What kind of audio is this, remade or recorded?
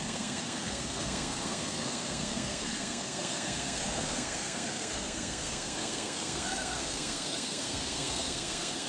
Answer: remade